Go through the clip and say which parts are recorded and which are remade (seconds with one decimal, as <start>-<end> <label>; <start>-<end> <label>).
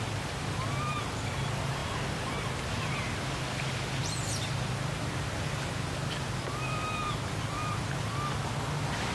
0.0-9.1 recorded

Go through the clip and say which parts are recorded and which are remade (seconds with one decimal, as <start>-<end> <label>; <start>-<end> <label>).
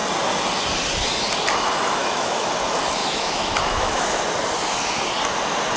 0.0-2.0 recorded; 2.0-2.5 remade; 2.5-3.0 recorded; 3.0-4.2 remade; 4.2-5.8 recorded